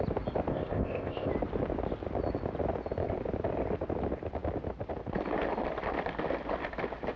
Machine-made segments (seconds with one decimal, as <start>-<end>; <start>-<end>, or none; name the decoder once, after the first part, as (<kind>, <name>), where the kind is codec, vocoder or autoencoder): 0.5-1.3 (codec, ZipCodec)